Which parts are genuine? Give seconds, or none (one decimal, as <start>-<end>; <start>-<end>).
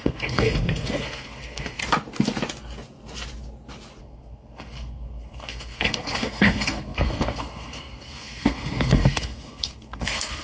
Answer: 1.8-4.0